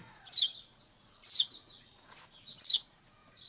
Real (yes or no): no